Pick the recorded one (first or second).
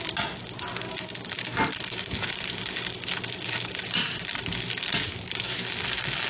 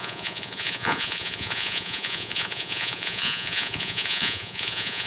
first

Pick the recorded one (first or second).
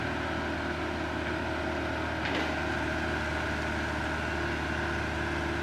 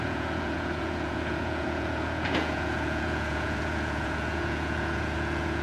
first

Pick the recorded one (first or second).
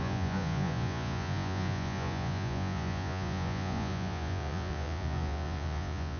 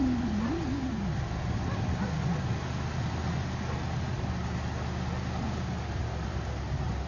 second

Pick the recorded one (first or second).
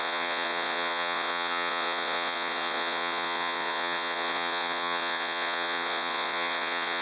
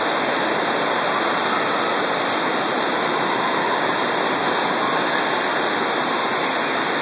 second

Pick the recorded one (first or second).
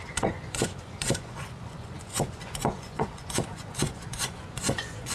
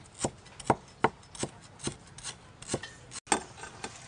second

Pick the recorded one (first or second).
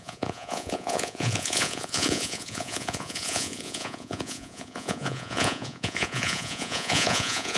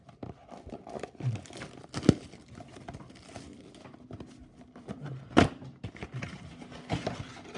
second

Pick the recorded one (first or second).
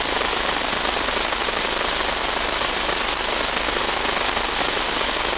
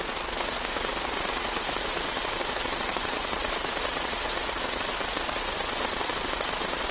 first